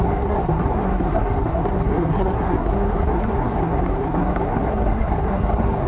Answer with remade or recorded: remade